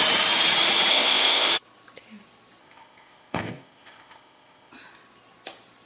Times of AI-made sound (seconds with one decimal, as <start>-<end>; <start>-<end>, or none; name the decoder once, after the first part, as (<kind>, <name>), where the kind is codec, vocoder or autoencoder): 0.9-1.5 (codec, ZipCodec); 2.6-4.7